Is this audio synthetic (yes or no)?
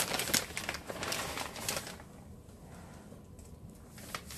no